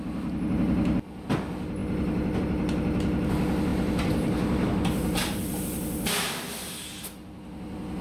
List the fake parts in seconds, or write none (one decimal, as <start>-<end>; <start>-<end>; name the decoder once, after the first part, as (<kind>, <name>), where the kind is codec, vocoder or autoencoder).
3.7-5.6 (vocoder, BigVGAN v2)